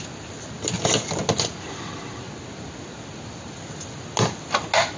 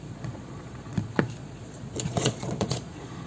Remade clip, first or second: second